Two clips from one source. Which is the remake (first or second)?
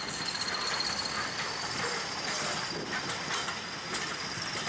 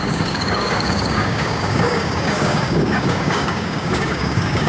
second